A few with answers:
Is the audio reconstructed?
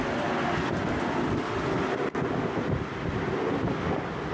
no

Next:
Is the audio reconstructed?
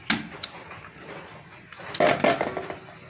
no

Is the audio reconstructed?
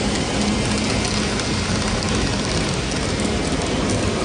no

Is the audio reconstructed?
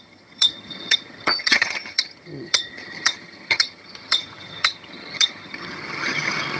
yes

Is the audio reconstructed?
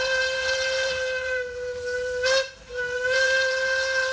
yes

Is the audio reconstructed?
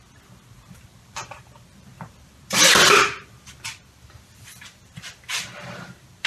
yes